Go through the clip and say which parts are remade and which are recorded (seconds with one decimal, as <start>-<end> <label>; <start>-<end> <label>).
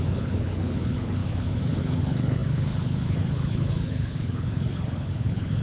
0.0-5.6 remade